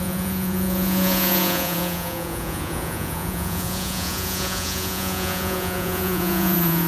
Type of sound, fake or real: fake